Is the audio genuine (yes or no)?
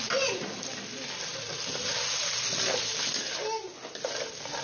yes